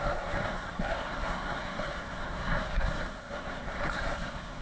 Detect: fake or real fake